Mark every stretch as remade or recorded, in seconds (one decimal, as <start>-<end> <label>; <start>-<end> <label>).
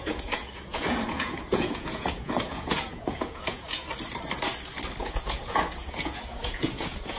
0.0-3.9 remade; 3.9-5.0 recorded; 5.0-7.2 remade